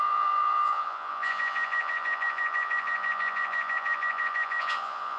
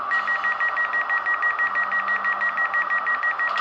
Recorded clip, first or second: second